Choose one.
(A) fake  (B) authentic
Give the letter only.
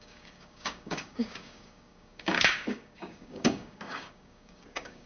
A